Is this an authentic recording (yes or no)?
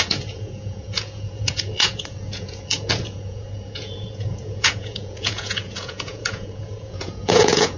no